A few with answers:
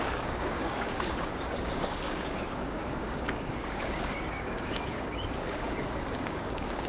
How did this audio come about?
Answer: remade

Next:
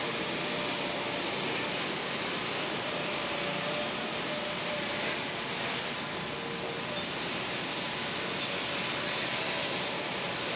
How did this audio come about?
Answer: recorded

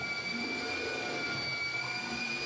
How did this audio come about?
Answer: recorded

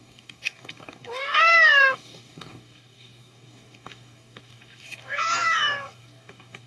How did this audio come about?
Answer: remade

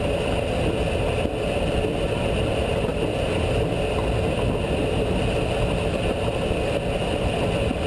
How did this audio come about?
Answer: recorded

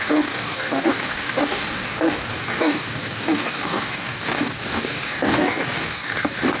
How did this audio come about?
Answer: remade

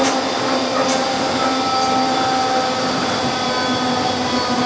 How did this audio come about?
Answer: recorded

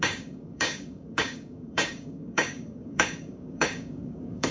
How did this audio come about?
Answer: remade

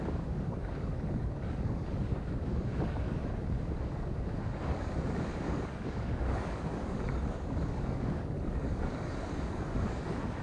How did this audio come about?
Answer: remade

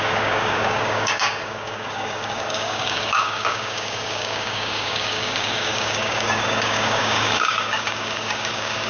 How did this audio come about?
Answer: remade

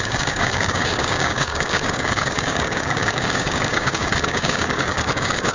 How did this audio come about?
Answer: remade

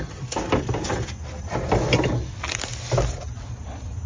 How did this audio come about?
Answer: recorded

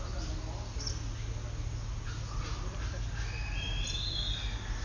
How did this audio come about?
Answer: recorded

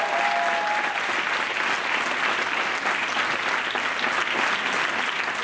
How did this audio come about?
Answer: recorded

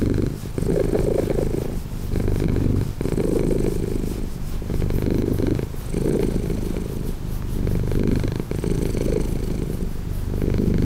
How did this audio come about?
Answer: recorded